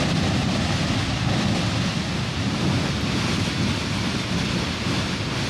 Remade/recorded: recorded